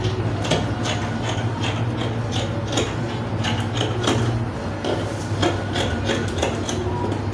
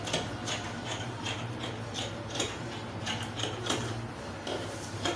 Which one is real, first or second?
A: first